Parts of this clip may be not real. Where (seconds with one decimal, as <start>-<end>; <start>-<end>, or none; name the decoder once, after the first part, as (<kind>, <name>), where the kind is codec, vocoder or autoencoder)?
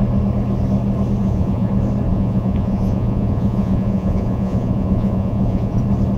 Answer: 1.2-1.7 (vocoder, Vocos); 2.1-5.8